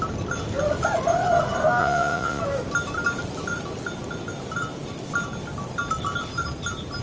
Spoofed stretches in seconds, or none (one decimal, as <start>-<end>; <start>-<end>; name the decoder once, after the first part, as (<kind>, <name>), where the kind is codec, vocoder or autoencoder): 1.8-2.4 (vocoder, Vocos)